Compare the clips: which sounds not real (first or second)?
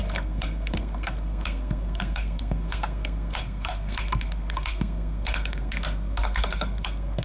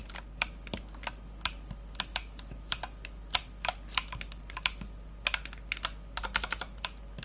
first